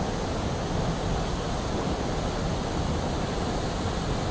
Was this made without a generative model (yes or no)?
yes